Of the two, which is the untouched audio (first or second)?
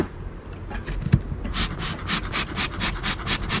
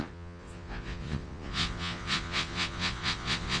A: first